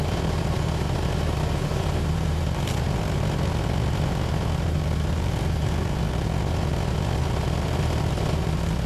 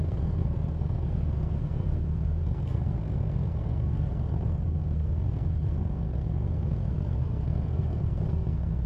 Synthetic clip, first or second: second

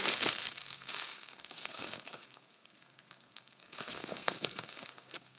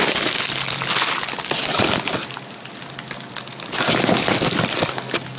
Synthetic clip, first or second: first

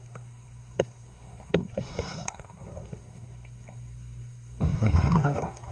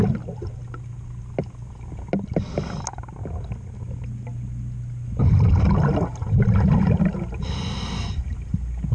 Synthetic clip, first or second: first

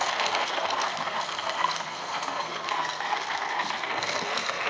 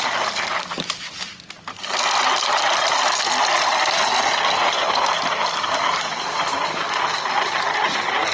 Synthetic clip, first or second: first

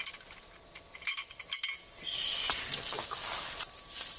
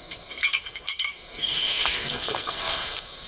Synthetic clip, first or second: second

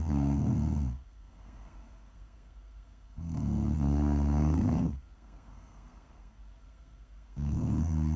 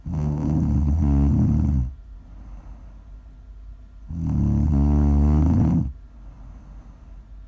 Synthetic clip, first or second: first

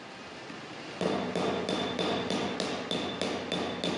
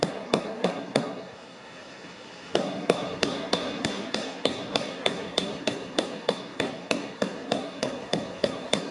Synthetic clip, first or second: second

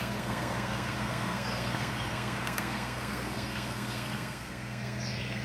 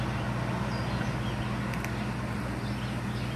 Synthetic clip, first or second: first